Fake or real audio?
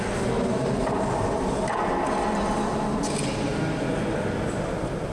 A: real